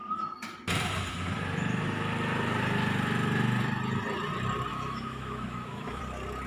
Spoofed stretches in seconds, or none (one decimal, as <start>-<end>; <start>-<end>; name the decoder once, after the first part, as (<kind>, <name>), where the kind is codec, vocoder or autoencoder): 4.7-6.0 (autoencoder, DAC-VAE)